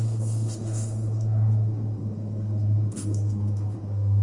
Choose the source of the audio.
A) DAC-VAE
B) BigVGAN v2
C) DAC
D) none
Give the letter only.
A